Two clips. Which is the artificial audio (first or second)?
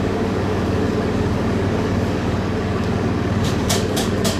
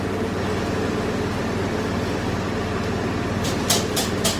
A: first